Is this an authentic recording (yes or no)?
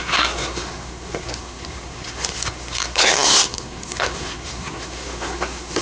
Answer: no